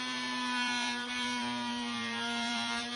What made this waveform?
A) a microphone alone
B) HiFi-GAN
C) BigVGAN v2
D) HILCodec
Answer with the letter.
C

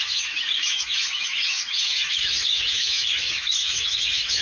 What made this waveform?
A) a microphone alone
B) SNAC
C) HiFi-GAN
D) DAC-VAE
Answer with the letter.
D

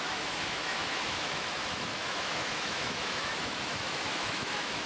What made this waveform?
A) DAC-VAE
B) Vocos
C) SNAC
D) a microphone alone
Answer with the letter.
A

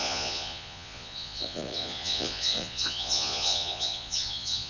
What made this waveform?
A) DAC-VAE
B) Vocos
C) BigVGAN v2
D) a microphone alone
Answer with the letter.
B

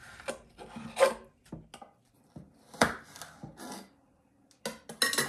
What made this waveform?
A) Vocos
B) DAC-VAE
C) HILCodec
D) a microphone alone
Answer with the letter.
D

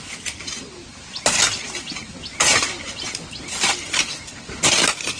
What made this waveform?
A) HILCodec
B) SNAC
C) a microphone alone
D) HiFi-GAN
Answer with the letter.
C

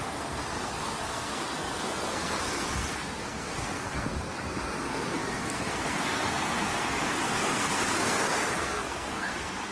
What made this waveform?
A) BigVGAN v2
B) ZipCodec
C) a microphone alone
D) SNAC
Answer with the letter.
D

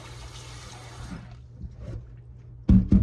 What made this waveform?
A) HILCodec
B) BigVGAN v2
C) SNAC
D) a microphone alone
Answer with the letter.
D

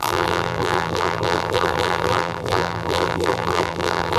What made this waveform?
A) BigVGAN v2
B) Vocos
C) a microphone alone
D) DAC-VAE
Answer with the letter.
A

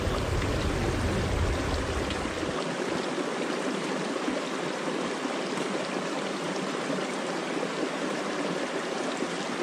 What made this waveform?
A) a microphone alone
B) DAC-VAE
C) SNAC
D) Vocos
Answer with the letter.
A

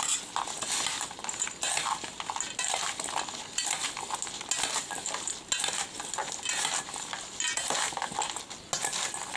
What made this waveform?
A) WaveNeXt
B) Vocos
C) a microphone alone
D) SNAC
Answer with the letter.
C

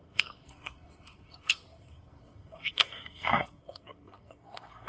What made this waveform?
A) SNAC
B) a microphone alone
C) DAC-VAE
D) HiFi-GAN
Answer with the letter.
A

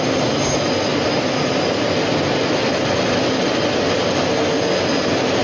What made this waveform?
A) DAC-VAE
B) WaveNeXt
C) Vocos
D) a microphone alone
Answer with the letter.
D